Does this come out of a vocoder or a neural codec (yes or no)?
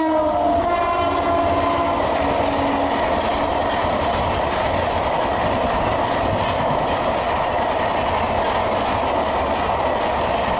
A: no